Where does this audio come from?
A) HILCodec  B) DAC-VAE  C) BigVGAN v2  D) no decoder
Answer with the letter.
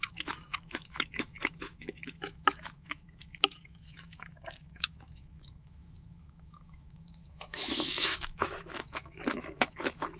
B